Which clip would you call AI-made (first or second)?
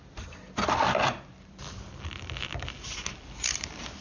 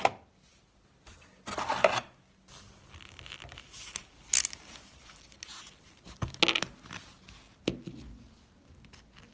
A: first